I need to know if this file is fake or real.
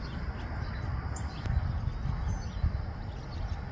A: real